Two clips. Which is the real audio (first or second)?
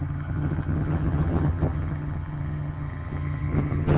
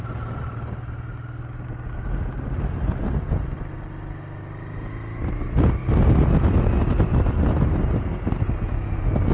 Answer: second